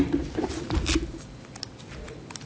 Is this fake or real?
real